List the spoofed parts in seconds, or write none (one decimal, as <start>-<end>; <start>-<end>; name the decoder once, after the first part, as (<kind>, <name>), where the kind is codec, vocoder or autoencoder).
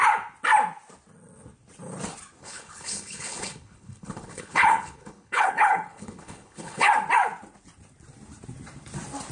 2.4-6.9 (codec, HILCodec)